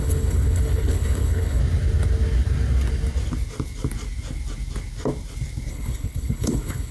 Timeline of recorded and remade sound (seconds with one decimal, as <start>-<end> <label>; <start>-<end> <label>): 0.0-1.6 remade; 1.6-5.7 recorded; 5.7-6.9 remade